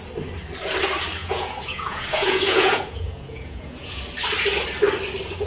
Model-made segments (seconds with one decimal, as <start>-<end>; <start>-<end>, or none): 1.2-4.0